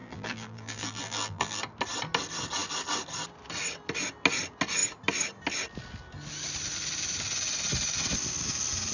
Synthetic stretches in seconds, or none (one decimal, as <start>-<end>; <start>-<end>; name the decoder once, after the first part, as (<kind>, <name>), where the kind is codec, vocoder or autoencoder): 0.0-1.6 (vocoder, BigVGAN v2)